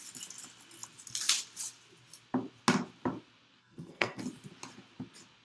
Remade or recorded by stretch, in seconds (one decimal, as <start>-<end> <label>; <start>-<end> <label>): 0.0-3.6 recorded; 3.6-4.2 remade; 4.2-5.4 recorded